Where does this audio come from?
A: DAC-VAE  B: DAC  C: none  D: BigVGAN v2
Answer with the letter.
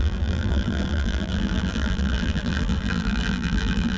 D